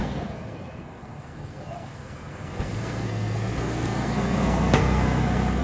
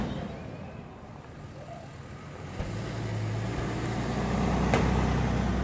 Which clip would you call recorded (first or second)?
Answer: second